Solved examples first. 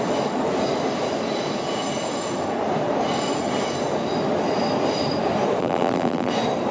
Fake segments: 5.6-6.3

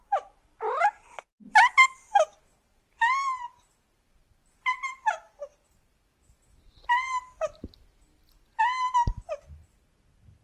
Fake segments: none

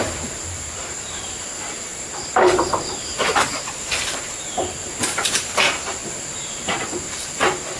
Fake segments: 0.0-7.8